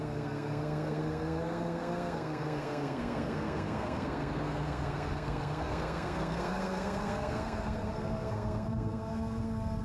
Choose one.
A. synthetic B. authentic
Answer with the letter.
A